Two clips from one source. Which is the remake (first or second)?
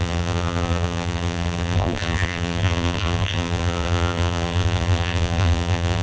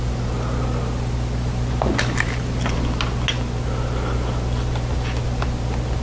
first